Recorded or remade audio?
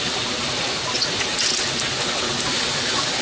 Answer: recorded